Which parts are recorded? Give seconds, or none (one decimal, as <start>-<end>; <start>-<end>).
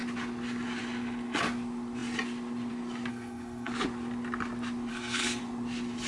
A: 0.0-3.1; 3.7-4.9; 5.4-6.1